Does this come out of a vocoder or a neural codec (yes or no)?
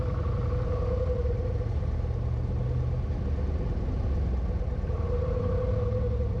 no